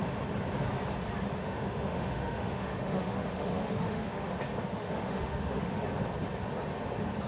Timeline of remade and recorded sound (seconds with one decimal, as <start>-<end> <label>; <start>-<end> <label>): 0.0-1.4 recorded; 1.4-4.3 remade; 4.3-4.7 recorded; 4.7-5.8 remade; 5.8-7.3 recorded